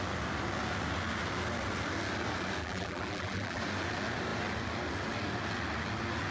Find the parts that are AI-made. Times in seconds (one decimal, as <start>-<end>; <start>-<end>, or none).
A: 2.6-3.6